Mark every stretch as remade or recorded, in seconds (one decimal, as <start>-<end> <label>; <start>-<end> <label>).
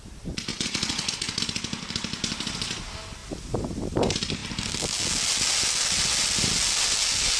0.0-0.5 recorded; 0.5-1.1 remade; 1.1-7.4 recorded